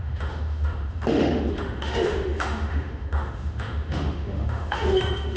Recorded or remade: remade